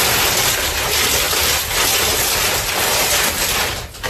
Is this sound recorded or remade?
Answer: recorded